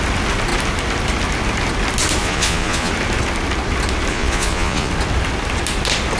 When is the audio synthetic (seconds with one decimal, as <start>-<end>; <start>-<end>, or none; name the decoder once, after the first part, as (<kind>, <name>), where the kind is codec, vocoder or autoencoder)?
2.2-2.9 (vocoder, Vocos); 4.1-4.9